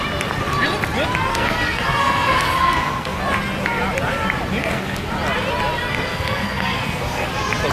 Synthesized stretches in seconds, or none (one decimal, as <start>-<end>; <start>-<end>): 1.3-3.2; 4.6-5.1; 5.8-7.3